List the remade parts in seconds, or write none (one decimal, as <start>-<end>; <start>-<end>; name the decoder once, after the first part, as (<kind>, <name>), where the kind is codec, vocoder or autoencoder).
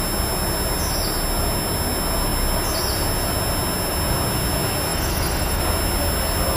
4.9-5.6 (autoencoder, DAC-VAE)